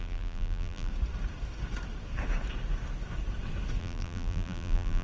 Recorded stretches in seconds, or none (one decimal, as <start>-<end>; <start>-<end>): 0.9-3.8